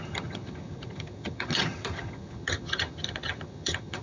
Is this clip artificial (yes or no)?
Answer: yes